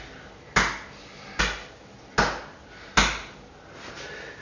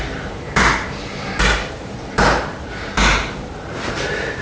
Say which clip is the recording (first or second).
first